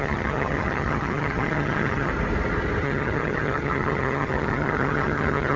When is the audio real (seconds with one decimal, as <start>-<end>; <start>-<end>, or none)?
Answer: 2.1-2.8